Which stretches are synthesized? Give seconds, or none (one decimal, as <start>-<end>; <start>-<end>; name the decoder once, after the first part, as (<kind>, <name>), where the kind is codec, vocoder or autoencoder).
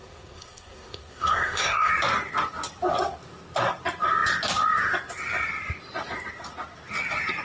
0.0-1.9 (codec, SNAC)